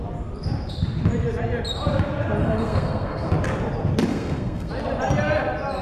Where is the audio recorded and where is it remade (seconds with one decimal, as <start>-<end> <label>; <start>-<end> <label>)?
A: 0.0-2.4 recorded; 2.4-3.3 remade; 3.3-4.1 recorded; 4.1-4.7 remade; 4.7-5.8 recorded